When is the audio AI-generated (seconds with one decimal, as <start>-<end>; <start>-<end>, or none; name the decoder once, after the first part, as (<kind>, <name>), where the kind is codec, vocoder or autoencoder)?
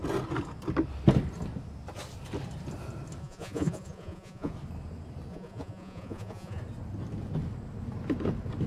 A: 3.2-4.5 (vocoder, Vocos); 5.3-6.6